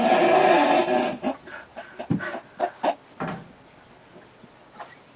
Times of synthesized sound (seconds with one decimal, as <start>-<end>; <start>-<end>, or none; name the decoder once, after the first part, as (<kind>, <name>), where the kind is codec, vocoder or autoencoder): none